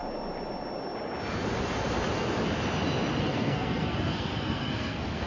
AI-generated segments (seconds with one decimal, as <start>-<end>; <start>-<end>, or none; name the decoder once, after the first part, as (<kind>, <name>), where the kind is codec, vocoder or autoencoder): 3.2-5.3 (codec, SNAC)

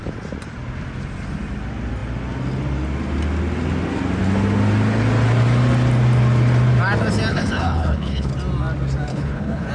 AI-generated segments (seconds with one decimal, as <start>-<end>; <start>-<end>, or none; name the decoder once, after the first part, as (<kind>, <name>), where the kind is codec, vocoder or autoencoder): 7.3-8.3 (codec, HILCodec); 9.1-9.7

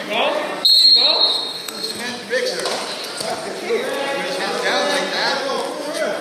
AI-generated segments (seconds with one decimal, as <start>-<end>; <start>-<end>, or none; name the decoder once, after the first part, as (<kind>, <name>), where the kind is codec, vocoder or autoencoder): 1.3-2.0 (codec, SNAC)

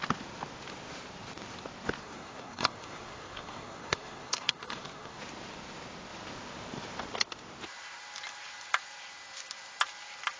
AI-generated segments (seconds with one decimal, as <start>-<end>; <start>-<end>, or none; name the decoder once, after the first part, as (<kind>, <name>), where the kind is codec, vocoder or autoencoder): 2.0-5.2 (codec, SNAC)